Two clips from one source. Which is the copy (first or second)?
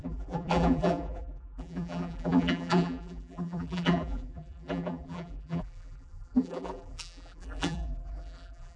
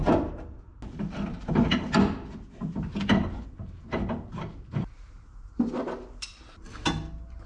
first